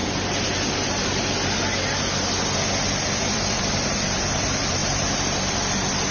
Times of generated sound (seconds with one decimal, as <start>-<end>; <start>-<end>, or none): none